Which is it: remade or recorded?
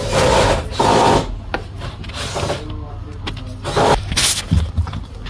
recorded